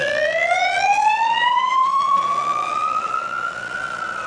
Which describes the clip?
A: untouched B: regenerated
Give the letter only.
B